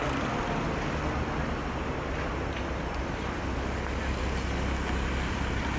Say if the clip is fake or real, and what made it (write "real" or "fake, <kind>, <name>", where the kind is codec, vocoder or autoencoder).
real